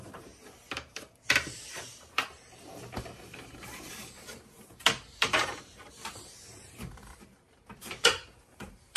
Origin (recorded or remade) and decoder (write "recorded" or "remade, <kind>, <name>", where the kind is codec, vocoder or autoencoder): remade, vocoder, BigVGAN v2